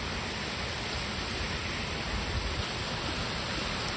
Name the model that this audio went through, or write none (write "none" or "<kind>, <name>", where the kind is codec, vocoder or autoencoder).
none